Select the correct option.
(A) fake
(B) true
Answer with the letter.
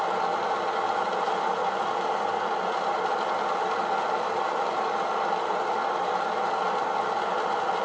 B